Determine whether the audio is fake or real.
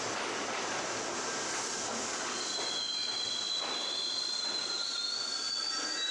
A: real